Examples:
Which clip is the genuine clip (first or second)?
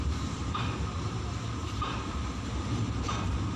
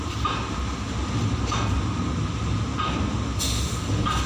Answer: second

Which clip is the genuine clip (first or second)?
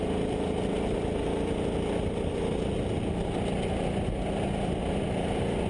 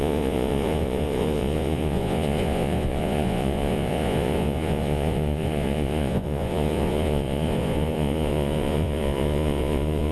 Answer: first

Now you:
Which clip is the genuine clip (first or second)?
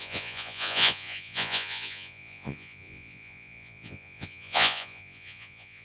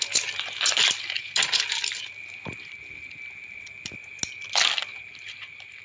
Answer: second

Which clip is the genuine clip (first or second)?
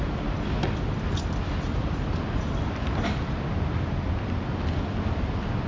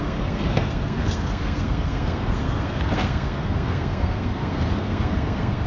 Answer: first